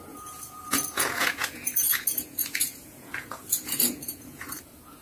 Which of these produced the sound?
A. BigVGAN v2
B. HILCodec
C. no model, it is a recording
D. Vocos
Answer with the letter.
D